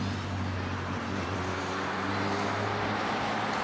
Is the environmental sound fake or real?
real